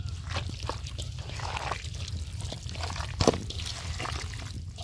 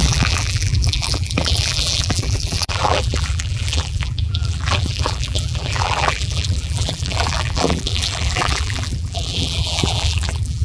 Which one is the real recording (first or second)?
first